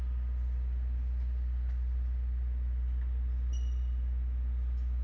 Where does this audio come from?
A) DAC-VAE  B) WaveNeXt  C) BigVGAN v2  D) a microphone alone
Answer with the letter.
D